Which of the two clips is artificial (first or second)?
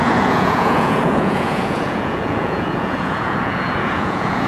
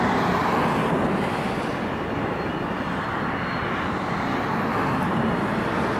first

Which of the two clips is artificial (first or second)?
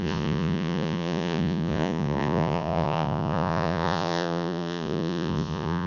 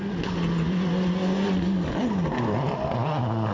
first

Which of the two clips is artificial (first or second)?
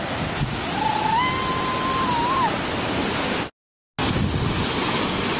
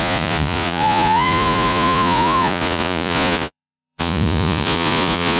second